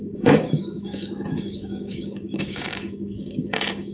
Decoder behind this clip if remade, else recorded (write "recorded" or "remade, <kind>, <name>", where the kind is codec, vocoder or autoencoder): remade, codec, DAC